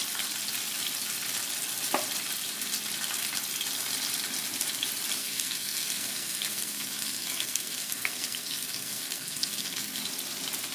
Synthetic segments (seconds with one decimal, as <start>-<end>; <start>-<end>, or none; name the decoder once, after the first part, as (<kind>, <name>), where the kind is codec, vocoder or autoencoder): 5.2-10.0 (codec, SNAC)